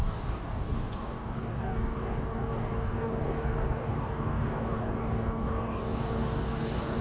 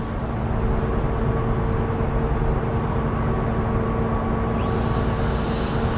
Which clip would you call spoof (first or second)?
first